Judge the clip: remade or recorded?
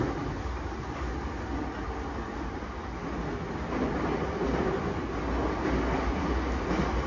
recorded